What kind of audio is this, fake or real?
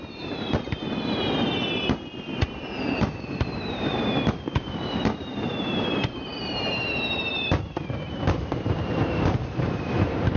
fake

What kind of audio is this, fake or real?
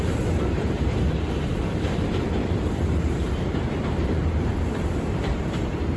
fake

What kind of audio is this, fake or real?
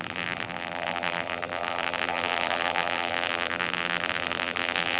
fake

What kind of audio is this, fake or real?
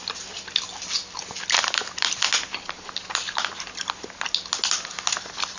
real